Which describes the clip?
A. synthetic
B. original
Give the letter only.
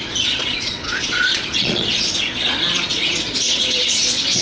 A